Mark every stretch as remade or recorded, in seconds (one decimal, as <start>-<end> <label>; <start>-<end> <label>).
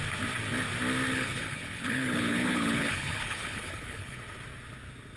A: 0.0-1.1 recorded; 1.1-4.2 remade; 4.2-5.2 recorded